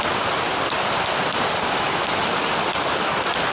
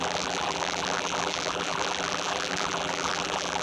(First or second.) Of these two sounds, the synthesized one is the second